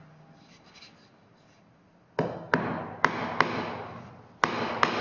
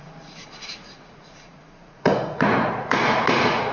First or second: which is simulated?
second